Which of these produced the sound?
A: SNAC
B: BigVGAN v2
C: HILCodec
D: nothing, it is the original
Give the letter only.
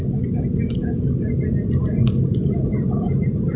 D